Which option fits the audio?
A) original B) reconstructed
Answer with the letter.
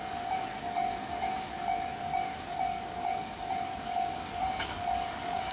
B